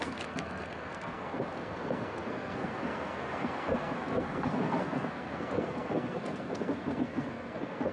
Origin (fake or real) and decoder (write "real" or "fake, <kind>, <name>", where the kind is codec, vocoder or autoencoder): fake, codec, SNAC